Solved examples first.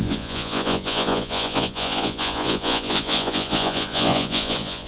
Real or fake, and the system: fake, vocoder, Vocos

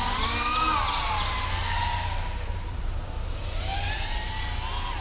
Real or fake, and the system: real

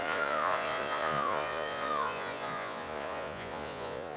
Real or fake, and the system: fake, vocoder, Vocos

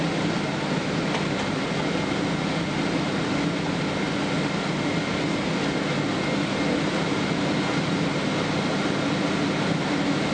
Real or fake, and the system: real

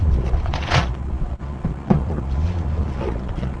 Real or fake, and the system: fake, vocoder, Vocos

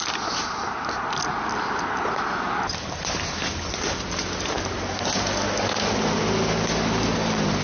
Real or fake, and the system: real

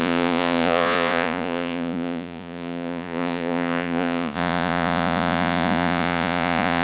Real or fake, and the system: fake, vocoder, Vocos